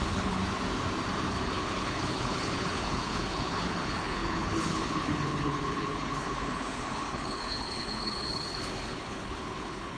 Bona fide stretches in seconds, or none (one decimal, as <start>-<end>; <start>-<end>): 0.4-1.3